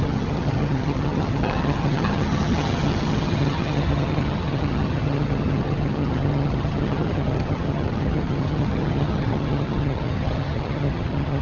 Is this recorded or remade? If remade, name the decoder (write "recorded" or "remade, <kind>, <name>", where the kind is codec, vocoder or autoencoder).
remade, vocoder, HiFi-GAN